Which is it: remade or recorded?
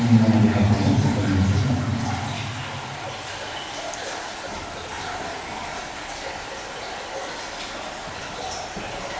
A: recorded